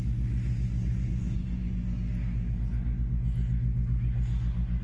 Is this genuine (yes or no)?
yes